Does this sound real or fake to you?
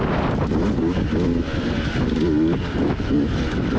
real